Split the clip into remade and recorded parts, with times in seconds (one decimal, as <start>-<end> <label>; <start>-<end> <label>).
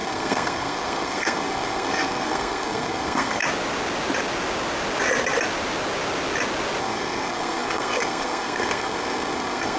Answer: 0.0-3.4 remade; 3.4-6.8 recorded; 6.8-9.8 remade